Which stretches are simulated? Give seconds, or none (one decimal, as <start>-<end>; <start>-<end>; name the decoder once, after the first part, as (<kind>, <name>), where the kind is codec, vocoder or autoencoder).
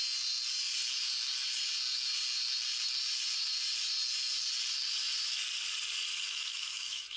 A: 6.1-7.2 (autoencoder, DAC-VAE)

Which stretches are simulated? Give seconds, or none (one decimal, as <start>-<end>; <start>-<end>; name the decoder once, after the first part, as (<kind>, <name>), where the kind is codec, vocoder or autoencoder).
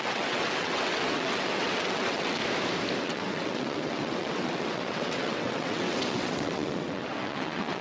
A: 0.0-2.4 (vocoder, WaveNeXt); 3.0-7.8